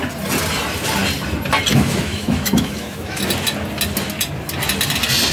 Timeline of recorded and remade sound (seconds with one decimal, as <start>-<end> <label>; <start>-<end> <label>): 0.0-1.7 recorded; 1.7-3.2 remade; 3.2-5.3 recorded

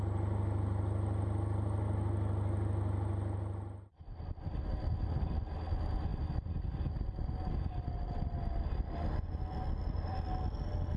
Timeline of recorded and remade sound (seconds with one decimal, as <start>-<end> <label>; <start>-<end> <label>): 0.0-11.0 recorded

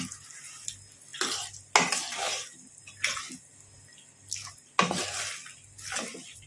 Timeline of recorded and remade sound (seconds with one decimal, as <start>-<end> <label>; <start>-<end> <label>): 0.0-6.5 recorded